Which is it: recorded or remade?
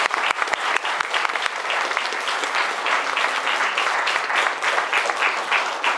recorded